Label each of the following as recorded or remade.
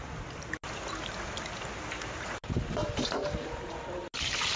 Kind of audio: recorded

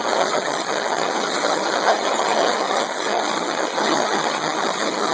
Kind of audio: remade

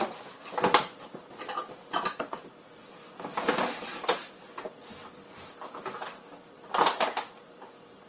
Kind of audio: recorded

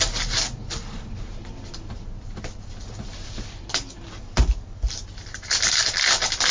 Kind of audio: recorded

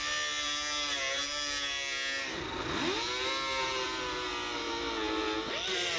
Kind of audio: recorded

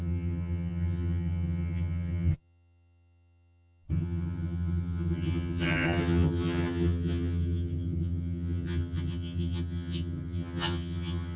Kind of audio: remade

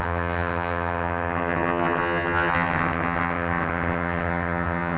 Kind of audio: remade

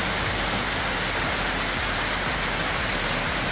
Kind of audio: recorded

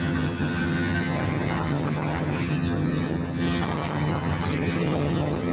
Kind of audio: remade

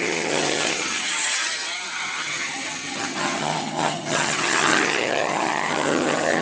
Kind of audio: remade